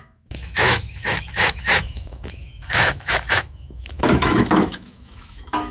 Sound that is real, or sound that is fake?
fake